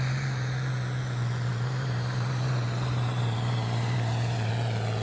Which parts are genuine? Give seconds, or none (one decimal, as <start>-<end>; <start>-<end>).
0.0-1.5; 4.5-5.0